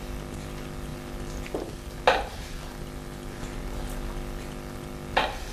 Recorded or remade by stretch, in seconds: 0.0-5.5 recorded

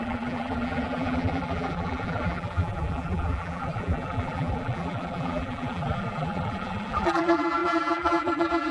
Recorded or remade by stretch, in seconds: 0.0-8.7 remade

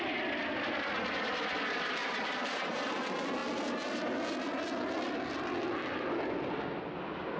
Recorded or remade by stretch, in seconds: 0.0-2.0 recorded; 2.0-2.9 remade; 2.9-7.4 recorded

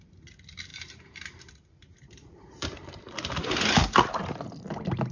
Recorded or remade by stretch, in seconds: 0.0-0.7 recorded; 0.7-3.0 remade; 3.0-5.1 recorded

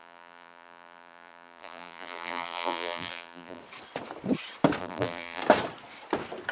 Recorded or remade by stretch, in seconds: 0.0-3.6 remade; 3.6-4.8 recorded; 4.8-5.4 remade; 5.4-6.5 recorded

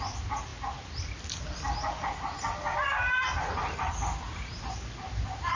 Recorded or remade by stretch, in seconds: 0.0-5.6 recorded

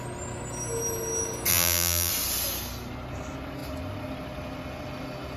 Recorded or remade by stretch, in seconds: 0.0-1.5 recorded; 1.5-2.1 remade; 2.1-5.4 recorded

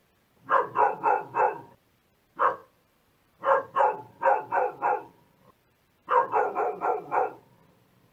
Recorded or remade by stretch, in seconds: 0.0-2.6 recorded; 2.6-7.1 remade; 7.1-8.1 recorded